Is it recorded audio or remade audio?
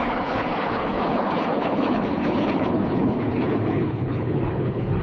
remade